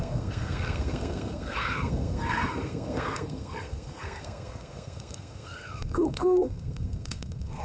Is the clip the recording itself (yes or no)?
no